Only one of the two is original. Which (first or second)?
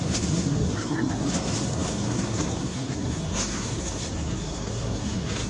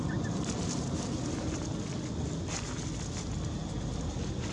second